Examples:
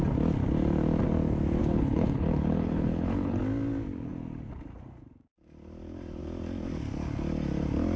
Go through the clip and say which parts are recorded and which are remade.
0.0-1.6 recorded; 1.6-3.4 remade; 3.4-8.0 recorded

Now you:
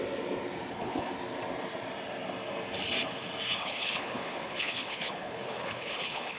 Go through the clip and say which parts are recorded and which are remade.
0.0-0.7 recorded; 0.7-1.1 remade; 1.1-3.6 recorded; 3.6-6.4 remade